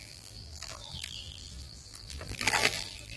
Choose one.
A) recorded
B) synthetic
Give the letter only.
B